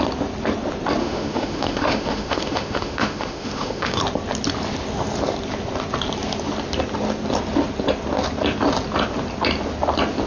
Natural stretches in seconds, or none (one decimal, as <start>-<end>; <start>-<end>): 0.0-1.0; 4.0-10.3